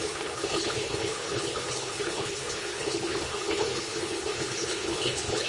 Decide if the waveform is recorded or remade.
remade